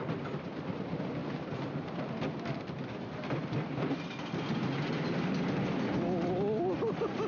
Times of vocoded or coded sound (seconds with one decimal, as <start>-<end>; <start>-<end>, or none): none